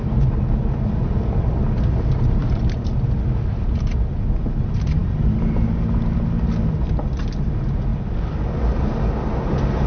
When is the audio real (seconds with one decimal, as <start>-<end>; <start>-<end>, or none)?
0.0-9.9